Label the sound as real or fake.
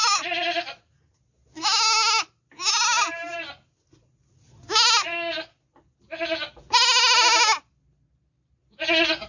real